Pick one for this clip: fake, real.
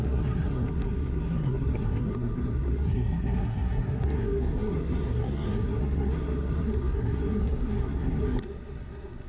fake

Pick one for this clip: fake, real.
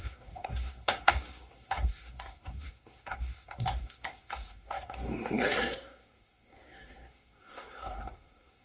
fake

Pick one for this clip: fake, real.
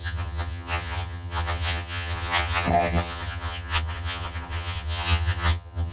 fake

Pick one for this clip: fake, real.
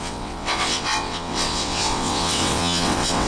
fake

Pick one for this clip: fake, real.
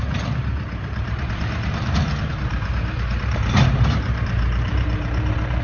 fake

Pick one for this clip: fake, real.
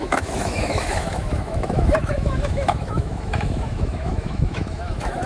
fake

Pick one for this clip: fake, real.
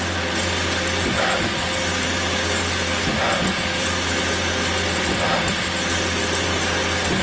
real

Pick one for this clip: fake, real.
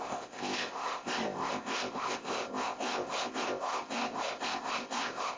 fake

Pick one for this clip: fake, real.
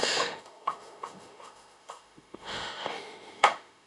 fake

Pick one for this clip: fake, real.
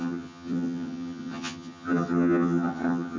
fake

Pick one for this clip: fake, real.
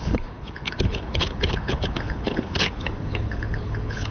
fake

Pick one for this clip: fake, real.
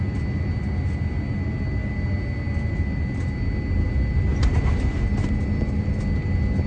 real